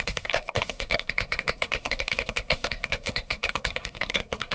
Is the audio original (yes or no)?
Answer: no